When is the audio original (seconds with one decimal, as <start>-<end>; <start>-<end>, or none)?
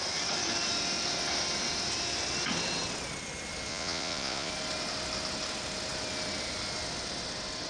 0.0-3.7; 4.5-7.7